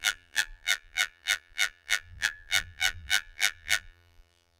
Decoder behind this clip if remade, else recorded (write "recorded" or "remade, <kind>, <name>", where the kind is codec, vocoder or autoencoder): remade, vocoder, BigVGAN v2